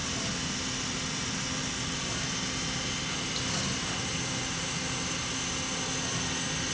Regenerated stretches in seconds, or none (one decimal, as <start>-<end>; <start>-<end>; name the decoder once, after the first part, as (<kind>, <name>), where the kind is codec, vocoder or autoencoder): none